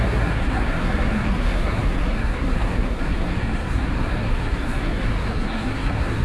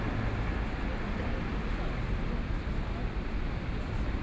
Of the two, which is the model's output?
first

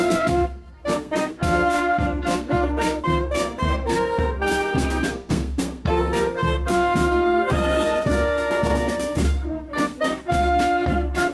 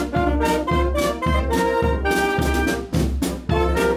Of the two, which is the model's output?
first